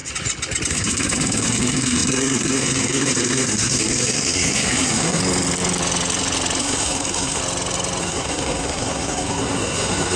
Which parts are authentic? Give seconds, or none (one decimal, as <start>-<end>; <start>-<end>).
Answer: 0.0-0.7; 5.2-6.6; 7.4-8.0